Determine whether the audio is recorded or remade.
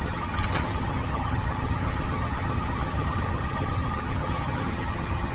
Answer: remade